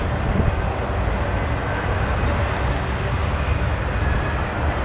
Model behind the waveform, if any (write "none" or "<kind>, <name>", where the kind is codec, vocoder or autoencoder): none